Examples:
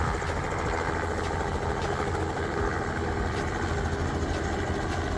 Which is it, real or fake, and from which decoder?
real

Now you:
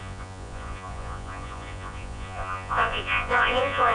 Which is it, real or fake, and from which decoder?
fake, vocoder, Vocos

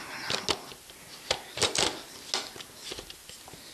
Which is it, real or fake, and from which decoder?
real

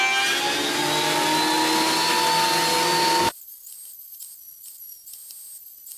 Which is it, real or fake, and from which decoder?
real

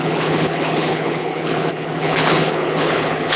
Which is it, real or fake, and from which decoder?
fake, codec, HILCodec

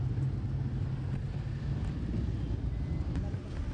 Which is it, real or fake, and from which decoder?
real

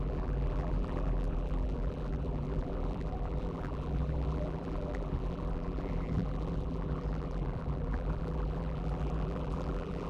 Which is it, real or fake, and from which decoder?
fake, vocoder, BigVGAN v2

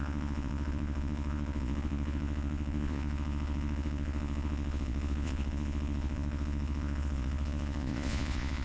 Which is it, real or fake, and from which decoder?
fake, vocoder, Vocos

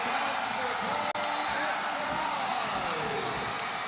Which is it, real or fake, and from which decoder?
real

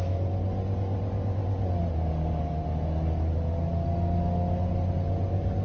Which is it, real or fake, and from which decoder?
real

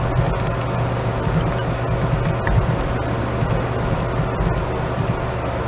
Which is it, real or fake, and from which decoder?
real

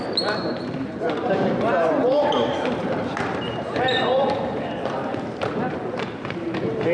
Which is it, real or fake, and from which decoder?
fake, vocoder, BigVGAN v2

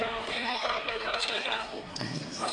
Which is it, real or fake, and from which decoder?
fake, codec, SNAC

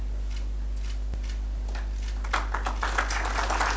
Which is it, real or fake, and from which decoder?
real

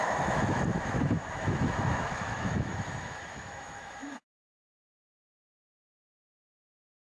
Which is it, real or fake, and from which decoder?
fake, autoencoder, DAC-VAE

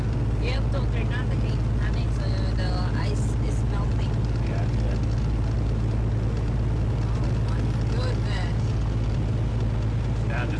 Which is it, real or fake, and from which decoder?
real